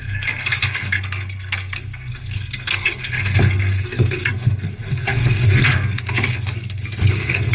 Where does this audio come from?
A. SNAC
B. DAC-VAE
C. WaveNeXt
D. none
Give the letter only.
A